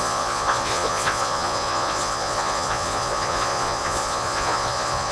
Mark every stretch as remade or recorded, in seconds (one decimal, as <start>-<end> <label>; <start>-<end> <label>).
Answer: 0.0-5.1 remade